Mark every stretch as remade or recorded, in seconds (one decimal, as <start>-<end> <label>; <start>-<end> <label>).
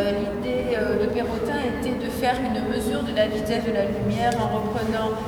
0.0-0.4 recorded; 0.4-3.6 remade; 3.6-5.3 recorded